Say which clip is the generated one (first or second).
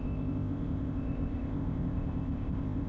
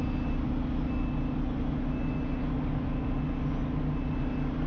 first